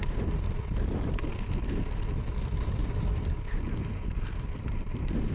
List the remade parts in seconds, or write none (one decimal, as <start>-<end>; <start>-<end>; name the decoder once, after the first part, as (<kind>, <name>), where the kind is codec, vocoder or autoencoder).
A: none